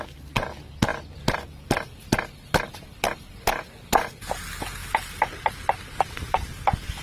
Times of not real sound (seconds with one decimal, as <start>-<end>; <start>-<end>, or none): 0.9-3.3